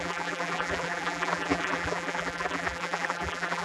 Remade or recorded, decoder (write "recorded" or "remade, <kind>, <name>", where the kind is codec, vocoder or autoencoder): remade, vocoder, BigVGAN v2